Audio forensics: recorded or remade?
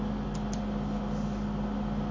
recorded